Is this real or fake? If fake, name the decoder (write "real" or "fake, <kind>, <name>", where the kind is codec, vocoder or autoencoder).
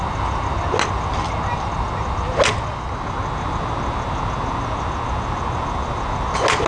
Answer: real